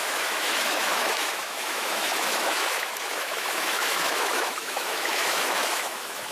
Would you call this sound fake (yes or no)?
yes